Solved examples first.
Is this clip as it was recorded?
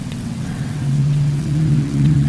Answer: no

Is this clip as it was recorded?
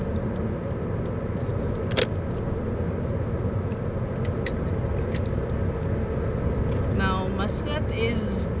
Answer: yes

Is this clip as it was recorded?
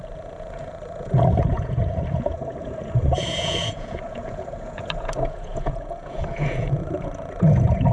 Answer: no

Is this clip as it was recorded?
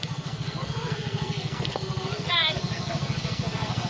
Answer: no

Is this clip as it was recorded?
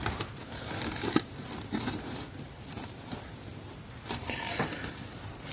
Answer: no